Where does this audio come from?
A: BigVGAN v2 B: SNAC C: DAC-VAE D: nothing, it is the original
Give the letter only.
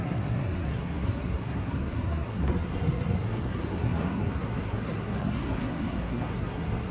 B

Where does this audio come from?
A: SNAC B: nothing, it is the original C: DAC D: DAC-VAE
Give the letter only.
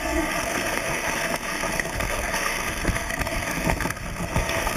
A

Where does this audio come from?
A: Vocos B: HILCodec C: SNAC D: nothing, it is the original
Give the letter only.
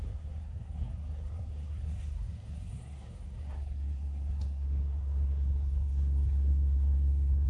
C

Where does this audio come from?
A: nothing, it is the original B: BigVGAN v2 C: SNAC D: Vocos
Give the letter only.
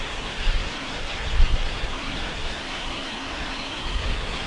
C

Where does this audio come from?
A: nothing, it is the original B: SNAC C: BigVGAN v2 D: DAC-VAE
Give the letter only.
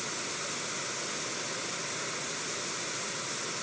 A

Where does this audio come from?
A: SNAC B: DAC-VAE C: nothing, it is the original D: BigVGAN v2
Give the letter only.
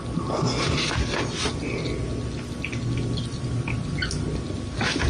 C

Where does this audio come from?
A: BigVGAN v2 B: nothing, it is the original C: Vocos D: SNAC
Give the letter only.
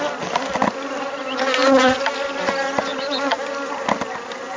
B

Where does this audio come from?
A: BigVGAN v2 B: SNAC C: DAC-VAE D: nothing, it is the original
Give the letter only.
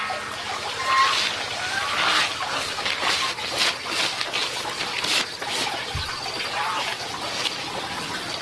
D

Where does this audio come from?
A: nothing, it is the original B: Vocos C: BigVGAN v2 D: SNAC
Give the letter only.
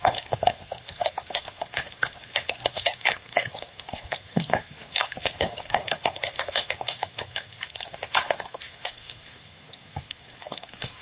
D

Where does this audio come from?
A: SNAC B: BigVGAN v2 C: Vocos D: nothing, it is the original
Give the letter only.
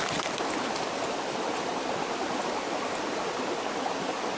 D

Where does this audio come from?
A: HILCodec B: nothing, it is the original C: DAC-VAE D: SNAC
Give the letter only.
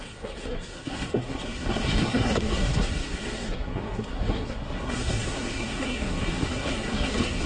D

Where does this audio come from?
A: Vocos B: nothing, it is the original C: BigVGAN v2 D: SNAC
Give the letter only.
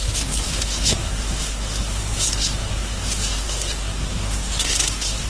D